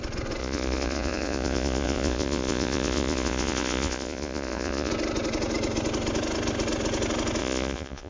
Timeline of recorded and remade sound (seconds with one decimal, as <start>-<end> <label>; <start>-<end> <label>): 0.0-0.4 recorded; 0.4-4.9 remade; 4.9-7.4 recorded; 7.4-8.1 remade